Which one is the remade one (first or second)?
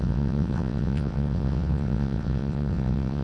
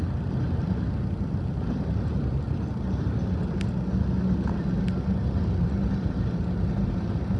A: first